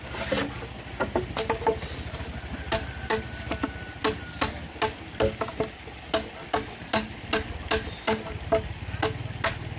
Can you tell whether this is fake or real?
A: real